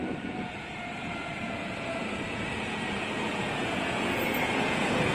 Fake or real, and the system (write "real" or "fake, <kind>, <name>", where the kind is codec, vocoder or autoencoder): fake, vocoder, Vocos